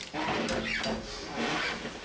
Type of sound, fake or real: real